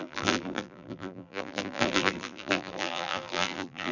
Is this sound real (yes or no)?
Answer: no